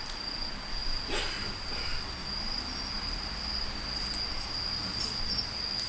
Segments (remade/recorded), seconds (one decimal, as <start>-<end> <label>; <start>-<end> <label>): 0.0-5.9 recorded